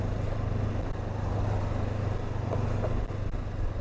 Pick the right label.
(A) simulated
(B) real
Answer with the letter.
B